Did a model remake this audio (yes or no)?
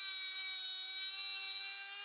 no